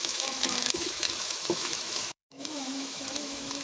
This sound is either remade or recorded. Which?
remade